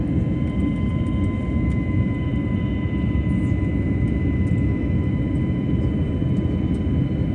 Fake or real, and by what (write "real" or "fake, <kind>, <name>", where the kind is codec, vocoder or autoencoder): real